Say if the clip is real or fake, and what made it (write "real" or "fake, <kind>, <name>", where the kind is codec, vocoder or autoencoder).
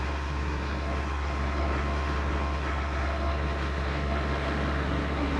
fake, codec, SNAC